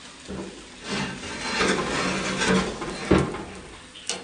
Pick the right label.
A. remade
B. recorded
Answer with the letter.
B